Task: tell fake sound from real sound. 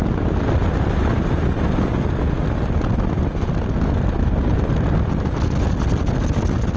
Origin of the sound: real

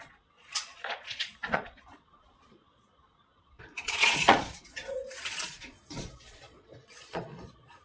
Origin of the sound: fake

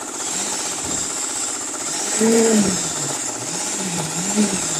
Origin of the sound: fake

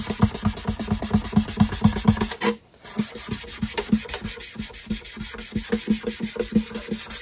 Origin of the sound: real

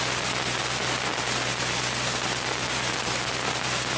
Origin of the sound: real